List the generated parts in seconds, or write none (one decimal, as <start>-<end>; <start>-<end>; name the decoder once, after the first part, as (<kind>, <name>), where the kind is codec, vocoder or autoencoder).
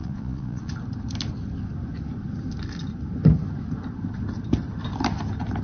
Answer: 0.0-0.7 (vocoder, Vocos)